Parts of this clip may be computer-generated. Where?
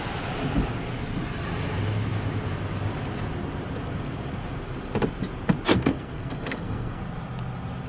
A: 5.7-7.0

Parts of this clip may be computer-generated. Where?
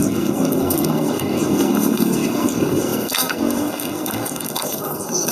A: 0.0-5.3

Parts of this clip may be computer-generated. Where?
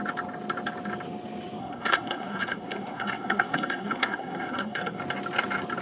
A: 1.6-5.0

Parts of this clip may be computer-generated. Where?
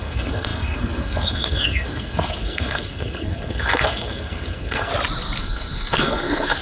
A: 0.0-4.9; 5.4-6.6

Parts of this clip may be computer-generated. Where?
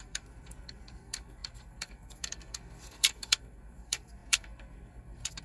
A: 0.0-5.4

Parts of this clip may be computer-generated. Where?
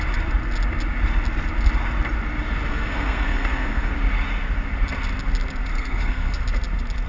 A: 2.7-3.9; 5.7-6.4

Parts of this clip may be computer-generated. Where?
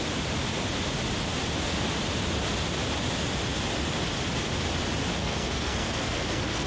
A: 5.2-6.7